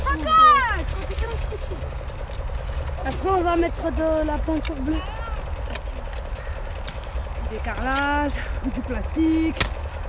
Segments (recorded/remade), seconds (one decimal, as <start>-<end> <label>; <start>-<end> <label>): 0.0-0.9 recorded; 0.9-2.0 remade; 2.0-3.0 recorded; 3.0-3.6 remade; 3.6-10.1 recorded